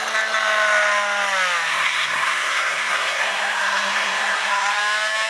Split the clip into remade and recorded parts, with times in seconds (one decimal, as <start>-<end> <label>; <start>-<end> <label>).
0.0-1.7 recorded; 1.7-4.8 remade; 4.8-5.3 recorded